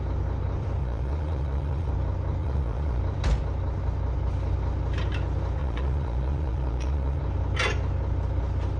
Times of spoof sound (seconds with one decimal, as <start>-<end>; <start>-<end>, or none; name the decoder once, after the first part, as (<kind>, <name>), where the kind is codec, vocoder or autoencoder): 0.8-1.9 (vocoder, Vocos); 2.4-3.0; 5.6-7.2